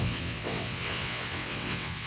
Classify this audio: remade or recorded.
remade